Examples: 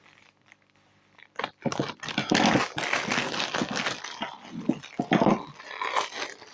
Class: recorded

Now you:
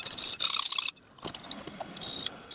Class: recorded